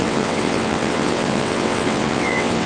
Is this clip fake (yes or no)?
yes